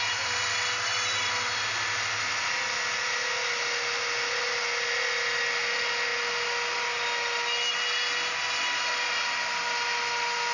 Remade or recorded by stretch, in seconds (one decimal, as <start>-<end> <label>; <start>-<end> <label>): 0.0-10.5 recorded